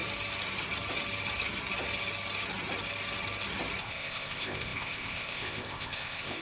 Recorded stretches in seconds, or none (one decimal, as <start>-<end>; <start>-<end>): 0.0-3.8